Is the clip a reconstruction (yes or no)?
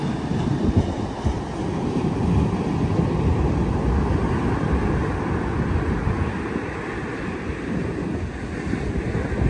no